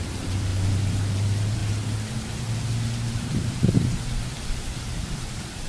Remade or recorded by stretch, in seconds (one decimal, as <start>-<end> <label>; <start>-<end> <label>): 0.0-0.5 remade; 0.5-1.1 recorded; 1.1-1.6 remade; 1.6-5.0 recorded; 5.0-5.7 remade